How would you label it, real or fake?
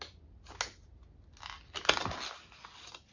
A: real